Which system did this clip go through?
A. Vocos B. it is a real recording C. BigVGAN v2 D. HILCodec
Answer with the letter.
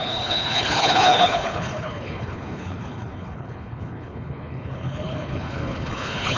D